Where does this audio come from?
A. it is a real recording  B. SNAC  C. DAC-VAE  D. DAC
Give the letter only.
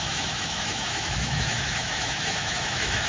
C